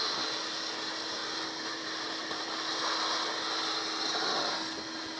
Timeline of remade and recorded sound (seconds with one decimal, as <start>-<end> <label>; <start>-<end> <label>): 0.0-1.2 recorded; 1.2-2.5 remade; 2.5-5.2 recorded